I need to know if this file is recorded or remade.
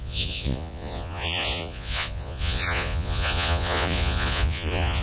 remade